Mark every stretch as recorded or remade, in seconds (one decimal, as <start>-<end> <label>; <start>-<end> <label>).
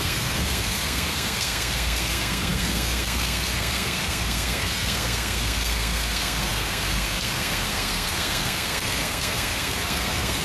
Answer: 0.0-10.4 remade